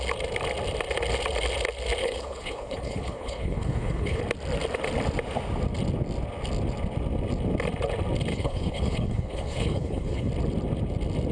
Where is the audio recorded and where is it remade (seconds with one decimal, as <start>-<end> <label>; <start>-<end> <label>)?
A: 0.0-2.0 recorded; 2.0-4.2 remade; 4.2-8.3 recorded; 8.3-10.3 remade; 10.3-11.3 recorded